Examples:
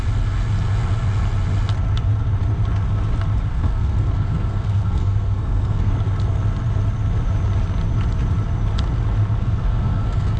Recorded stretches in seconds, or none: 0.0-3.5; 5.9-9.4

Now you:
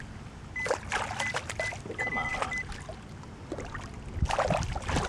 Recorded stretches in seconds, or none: 0.0-5.1

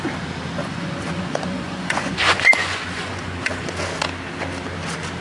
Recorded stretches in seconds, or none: 0.0-0.6; 3.7-5.2

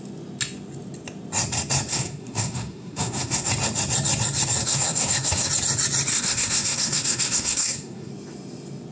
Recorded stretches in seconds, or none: 0.0-1.9; 3.5-4.6; 5.5-6.1; 8.1-8.9

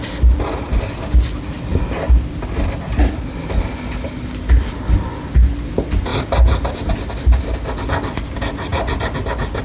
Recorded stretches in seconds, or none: 0.0-9.6

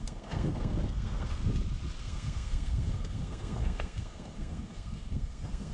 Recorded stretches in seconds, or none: 1.4-2.0

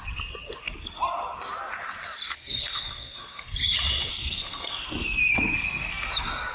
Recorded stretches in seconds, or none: 0.0-2.3; 3.4-4.1; 6.1-6.5